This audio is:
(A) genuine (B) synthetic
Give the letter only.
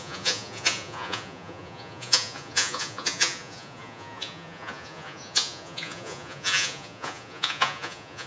B